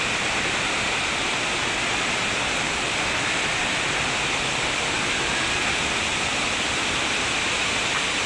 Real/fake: real